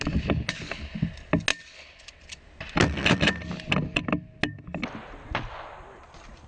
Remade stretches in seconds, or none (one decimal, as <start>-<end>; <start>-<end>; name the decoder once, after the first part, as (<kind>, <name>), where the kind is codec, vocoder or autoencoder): none